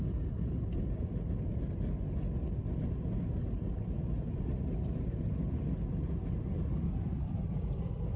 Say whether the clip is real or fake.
real